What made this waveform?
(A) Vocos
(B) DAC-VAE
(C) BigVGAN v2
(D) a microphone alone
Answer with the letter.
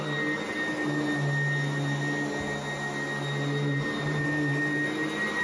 D